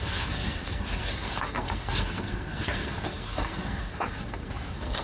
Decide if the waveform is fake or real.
fake